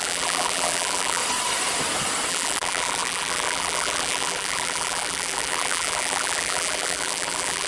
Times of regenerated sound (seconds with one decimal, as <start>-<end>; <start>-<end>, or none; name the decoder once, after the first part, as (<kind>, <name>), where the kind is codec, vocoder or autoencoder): 0.0-1.2 (vocoder, BigVGAN v2); 2.3-7.7